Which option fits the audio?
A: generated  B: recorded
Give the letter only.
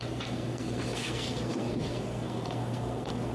A